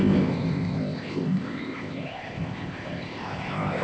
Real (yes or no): no